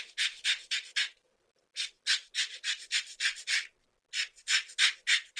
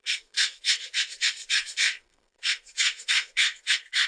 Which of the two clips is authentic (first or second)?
first